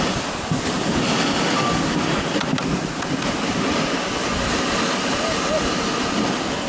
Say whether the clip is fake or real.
real